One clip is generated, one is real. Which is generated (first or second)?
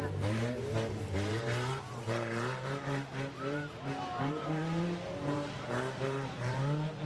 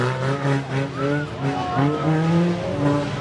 first